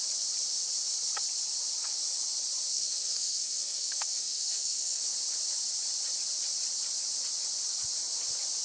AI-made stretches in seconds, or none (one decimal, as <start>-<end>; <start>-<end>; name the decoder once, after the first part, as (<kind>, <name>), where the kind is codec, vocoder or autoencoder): 2.7-5.0 (codec, SNAC)